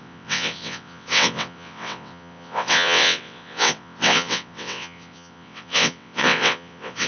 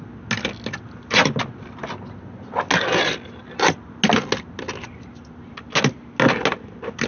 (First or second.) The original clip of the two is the second